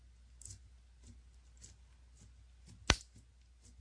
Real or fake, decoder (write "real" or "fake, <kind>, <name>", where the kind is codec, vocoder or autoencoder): real